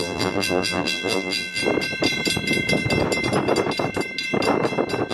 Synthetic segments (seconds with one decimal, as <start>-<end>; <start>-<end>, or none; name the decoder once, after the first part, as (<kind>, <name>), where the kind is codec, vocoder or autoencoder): 0.0-1.6 (vocoder, BigVGAN v2)